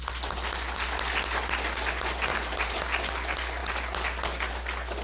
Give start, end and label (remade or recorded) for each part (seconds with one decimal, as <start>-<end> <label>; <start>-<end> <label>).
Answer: 0.0-2.3 recorded; 2.3-2.8 remade; 2.8-5.0 recorded